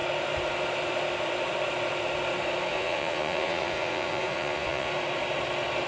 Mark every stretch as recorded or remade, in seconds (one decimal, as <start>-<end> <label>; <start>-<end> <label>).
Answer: 0.0-2.7 recorded; 2.7-4.9 remade; 4.9-5.9 recorded